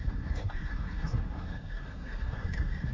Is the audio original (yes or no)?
no